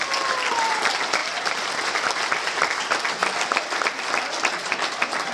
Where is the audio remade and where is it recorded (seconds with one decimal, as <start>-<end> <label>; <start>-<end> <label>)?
0.0-1.2 recorded; 1.2-2.2 remade; 2.2-3.2 recorded; 3.2-4.7 remade; 4.7-5.3 recorded